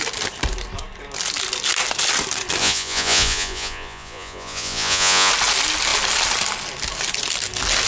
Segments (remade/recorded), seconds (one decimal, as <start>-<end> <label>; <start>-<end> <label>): 0.0-2.6 recorded; 2.6-5.3 remade; 5.3-7.9 recorded